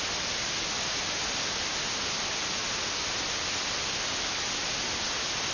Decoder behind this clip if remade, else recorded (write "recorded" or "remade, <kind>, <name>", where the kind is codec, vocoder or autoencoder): recorded